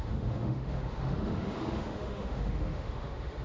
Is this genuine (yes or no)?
no